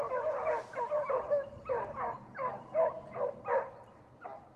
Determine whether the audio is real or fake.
real